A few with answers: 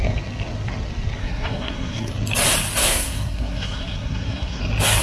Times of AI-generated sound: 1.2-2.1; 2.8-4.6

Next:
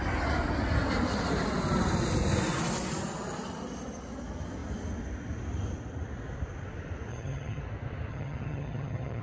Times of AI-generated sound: 7.1-7.6; 8.1-9.2

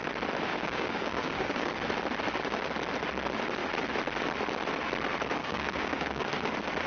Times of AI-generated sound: 0.5-1.7; 5.4-6.3

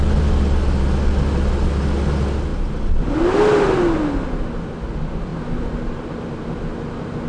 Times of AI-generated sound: none

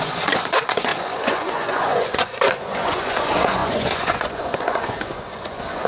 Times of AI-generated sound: 0.0-5.9

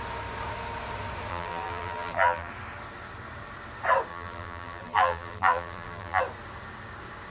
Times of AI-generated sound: 1.3-2.5; 4.1-6.2

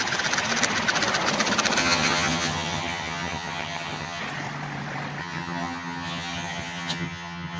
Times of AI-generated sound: 1.8-4.2; 5.2-7.6